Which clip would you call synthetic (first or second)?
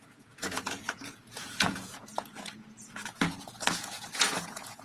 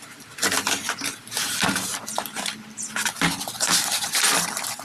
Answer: first